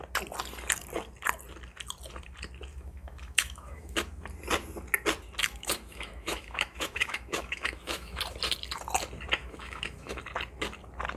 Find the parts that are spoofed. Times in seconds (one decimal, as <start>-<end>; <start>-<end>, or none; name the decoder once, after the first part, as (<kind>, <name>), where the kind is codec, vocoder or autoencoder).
2.7-4.0 (autoencoder, DAC-VAE); 5.4-8.2; 9.4-10.2